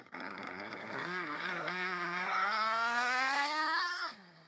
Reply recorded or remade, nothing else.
remade